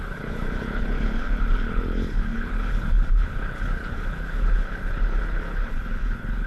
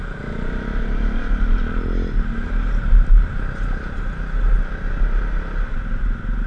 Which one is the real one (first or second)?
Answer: second